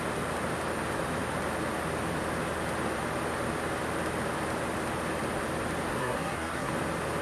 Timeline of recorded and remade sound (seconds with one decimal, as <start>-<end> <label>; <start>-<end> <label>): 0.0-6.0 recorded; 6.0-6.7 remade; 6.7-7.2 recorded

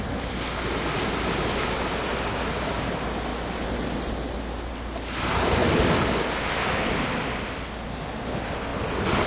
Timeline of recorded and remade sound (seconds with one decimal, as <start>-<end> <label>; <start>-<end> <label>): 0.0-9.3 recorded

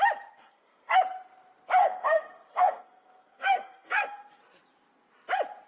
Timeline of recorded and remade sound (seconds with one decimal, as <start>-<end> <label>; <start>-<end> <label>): 0.0-0.4 recorded; 0.4-1.0 remade; 1.0-1.8 recorded; 1.8-4.4 remade; 4.4-5.7 recorded

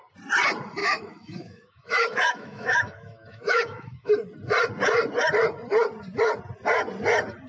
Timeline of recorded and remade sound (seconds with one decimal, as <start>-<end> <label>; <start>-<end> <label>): 0.0-0.8 recorded; 0.8-4.1 remade; 4.1-7.5 recorded

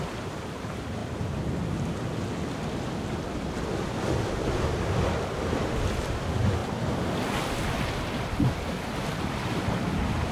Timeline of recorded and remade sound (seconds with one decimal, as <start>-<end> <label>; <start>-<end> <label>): 0.0-10.3 recorded

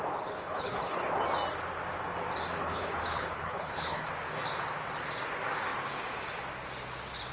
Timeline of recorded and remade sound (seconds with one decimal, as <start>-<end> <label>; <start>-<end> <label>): 0.0-0.4 recorded; 0.4-1.1 remade; 1.1-2.6 recorded; 2.6-4.1 remade; 4.1-7.3 recorded

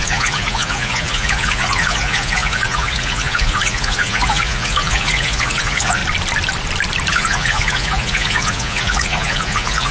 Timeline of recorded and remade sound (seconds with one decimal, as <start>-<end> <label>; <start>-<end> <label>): 0.0-6.0 remade; 6.0-7.1 recorded; 7.1-9.9 remade